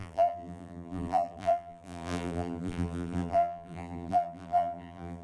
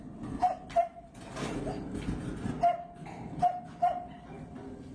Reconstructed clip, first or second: first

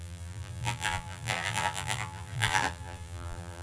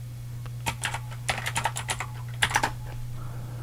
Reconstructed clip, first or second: first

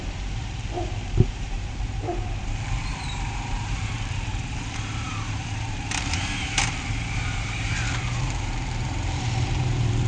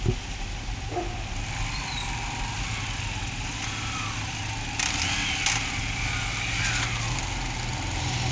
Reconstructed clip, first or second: first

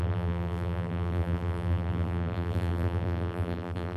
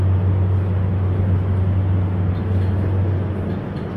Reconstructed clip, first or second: first